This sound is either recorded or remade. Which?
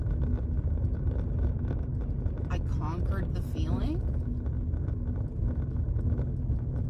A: recorded